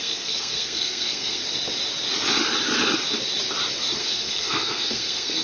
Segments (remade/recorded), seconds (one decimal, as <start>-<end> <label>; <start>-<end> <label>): 0.0-1.4 remade; 1.4-4.0 recorded; 4.0-5.4 remade